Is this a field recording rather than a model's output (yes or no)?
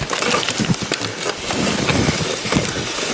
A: yes